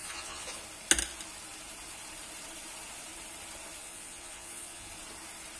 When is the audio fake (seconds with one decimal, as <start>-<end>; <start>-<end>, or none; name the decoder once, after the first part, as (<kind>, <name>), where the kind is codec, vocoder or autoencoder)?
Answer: 0.0-0.6 (vocoder, Vocos); 3.8-4.9